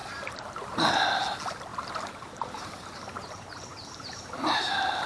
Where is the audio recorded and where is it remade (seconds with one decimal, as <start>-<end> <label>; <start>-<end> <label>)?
0.0-0.9 remade; 0.9-1.7 recorded; 1.7-5.1 remade